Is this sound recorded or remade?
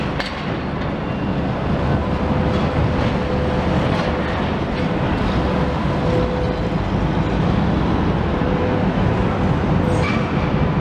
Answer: recorded